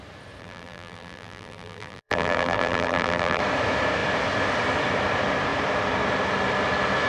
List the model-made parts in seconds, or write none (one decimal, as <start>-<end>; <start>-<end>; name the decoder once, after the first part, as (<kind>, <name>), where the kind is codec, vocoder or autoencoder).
0.4-3.4 (vocoder, BigVGAN v2)